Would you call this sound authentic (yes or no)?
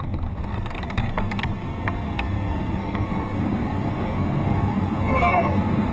no